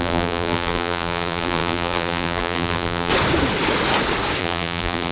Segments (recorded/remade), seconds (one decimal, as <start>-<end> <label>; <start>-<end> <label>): 0.0-3.1 remade; 3.1-4.4 recorded; 4.4-5.1 remade